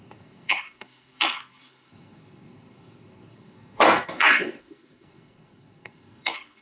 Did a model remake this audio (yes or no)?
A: yes